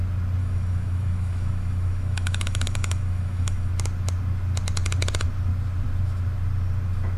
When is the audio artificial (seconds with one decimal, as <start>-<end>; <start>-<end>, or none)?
0.4-3.7

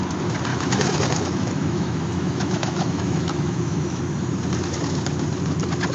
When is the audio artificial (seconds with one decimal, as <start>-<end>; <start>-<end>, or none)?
0.5-4.0

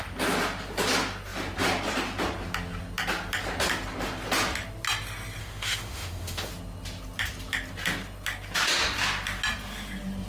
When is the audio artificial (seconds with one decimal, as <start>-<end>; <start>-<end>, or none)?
5.4-6.5

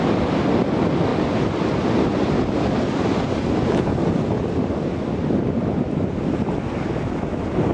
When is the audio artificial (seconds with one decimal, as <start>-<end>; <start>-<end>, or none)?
none

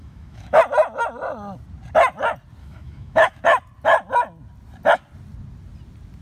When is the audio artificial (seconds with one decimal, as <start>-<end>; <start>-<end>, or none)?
0.0-0.6; 2.6-3.4

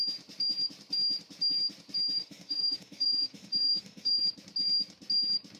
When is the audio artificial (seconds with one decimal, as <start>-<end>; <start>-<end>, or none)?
2.2-4.2

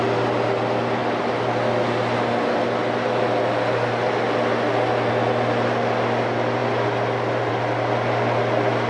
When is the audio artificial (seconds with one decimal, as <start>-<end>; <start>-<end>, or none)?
none